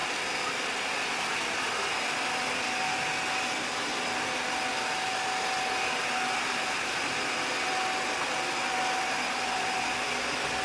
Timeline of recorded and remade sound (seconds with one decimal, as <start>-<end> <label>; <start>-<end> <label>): 0.0-10.6 recorded